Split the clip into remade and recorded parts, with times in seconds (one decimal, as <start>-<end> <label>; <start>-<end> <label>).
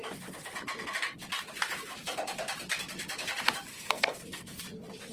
0.0-3.7 recorded; 3.7-4.6 remade; 4.6-5.1 recorded